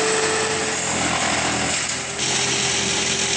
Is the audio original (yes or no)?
yes